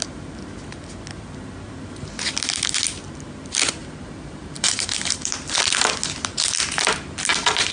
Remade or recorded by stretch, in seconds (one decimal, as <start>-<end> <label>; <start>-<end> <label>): 0.0-3.8 recorded; 3.8-5.6 remade; 5.6-7.7 recorded